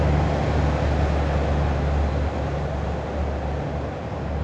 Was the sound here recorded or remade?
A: recorded